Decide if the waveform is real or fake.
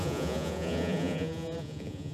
fake